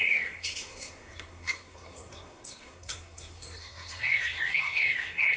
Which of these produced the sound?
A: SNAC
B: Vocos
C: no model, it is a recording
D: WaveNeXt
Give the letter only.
A